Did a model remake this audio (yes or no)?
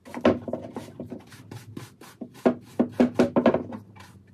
no